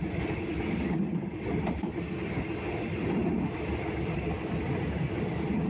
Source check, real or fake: real